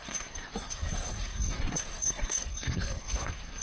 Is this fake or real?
fake